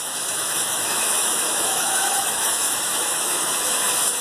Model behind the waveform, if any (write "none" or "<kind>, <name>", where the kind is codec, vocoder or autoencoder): autoencoder, DAC-VAE